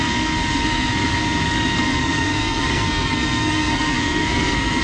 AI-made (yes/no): yes